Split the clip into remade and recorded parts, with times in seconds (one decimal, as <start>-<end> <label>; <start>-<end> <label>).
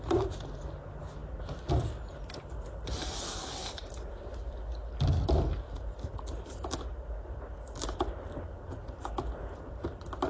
0.0-10.3 recorded